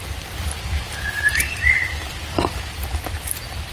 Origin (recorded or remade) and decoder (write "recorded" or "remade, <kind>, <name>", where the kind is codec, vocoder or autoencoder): recorded